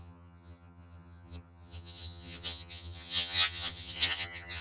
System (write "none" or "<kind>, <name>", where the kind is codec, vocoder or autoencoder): vocoder, HiFi-GAN